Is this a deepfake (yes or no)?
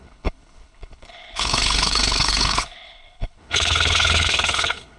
yes